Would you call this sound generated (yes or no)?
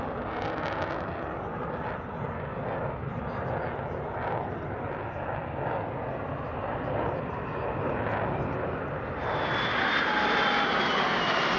no